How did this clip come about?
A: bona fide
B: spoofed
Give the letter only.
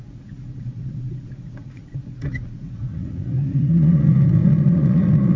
B